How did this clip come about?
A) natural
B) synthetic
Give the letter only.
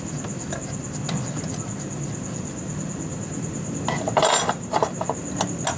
A